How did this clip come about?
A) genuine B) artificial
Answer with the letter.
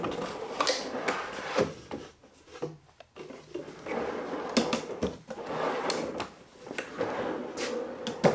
A